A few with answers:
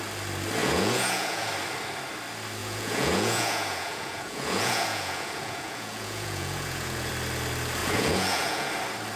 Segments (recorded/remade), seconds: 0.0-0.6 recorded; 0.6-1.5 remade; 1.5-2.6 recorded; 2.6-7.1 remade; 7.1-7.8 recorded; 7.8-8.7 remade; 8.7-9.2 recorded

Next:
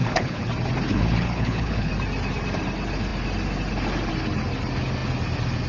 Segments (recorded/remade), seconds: 0.0-0.5 remade; 0.5-0.9 recorded; 0.9-1.9 remade; 1.9-5.7 recorded